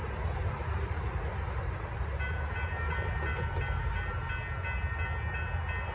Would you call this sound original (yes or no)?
yes